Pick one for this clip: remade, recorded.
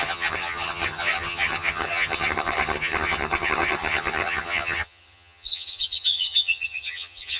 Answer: remade